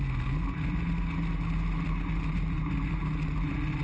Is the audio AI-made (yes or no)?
no